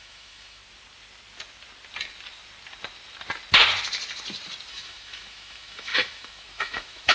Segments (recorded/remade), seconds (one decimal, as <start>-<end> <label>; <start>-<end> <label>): 0.0-0.6 remade; 0.6-4.7 recorded; 4.7-7.1 remade